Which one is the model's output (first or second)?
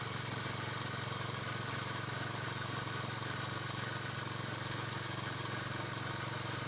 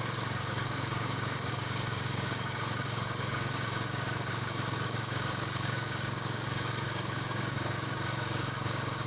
second